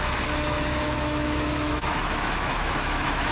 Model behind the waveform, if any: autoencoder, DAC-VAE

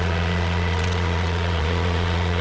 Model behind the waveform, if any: vocoder, Vocos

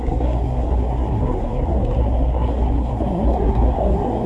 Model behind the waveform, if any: codec, SNAC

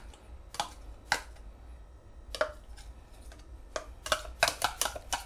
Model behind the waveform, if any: none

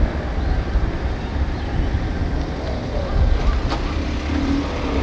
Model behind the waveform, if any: none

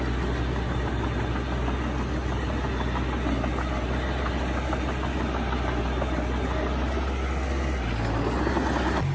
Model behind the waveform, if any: none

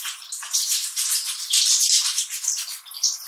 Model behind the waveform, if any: none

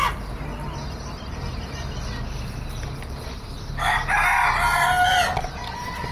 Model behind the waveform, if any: none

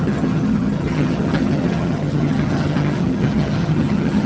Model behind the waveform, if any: vocoder, HiFi-GAN